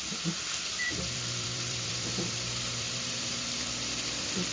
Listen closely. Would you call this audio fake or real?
fake